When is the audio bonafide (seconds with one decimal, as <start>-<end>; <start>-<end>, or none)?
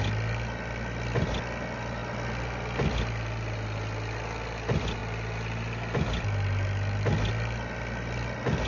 0.0-8.7